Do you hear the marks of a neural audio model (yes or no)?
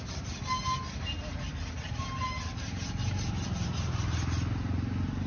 no